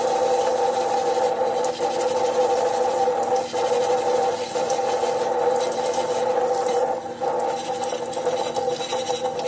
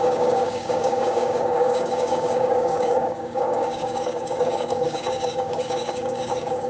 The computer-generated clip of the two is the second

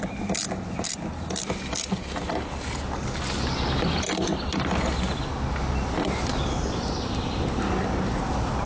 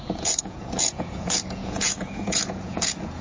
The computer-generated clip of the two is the second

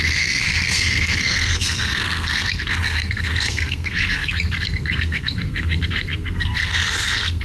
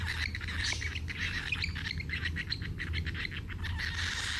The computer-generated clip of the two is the first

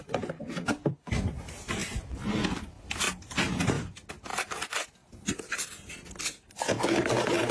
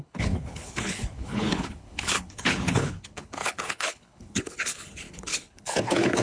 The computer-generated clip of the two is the second